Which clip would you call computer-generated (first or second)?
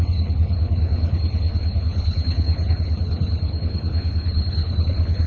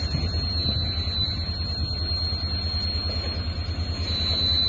first